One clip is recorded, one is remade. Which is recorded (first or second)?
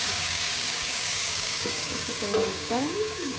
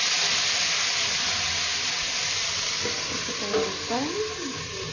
second